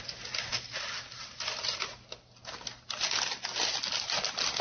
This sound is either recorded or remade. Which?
recorded